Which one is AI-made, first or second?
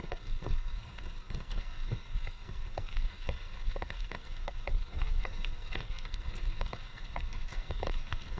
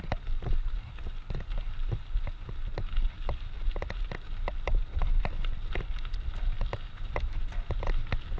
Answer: first